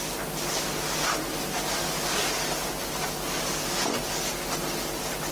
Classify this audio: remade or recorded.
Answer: recorded